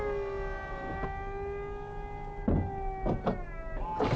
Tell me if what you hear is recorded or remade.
recorded